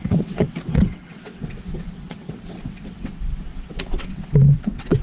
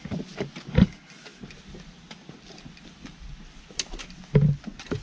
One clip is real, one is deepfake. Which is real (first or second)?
second